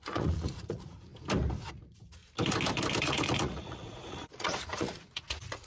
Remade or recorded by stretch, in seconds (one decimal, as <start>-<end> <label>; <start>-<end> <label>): 0.0-1.1 remade; 1.1-1.7 recorded; 1.7-2.2 remade; 2.2-3.0 recorded; 3.0-5.7 remade

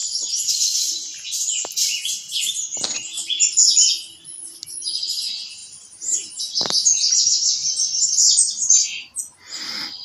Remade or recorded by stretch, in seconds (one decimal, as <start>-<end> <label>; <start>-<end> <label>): 0.0-10.0 recorded

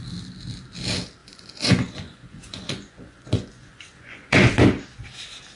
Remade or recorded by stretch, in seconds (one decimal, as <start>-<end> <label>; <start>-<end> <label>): 0.0-1.2 recorded; 1.2-4.6 remade; 4.6-5.6 recorded

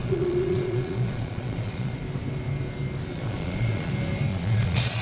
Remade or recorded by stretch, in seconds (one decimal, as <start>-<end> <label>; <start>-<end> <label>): 0.0-1.9 remade; 1.9-3.1 recorded; 3.1-3.9 remade; 3.9-4.3 recorded; 4.3-5.0 remade

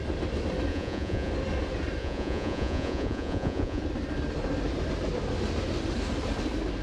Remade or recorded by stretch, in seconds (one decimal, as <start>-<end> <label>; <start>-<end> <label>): 0.0-0.7 recorded; 0.7-1.3 remade; 1.3-2.0 recorded; 2.0-3.8 remade; 3.8-6.8 recorded

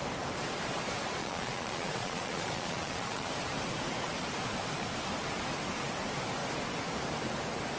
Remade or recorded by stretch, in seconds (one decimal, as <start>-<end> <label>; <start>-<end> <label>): 0.0-1.2 recorded; 1.2-3.3 remade; 3.3-7.8 recorded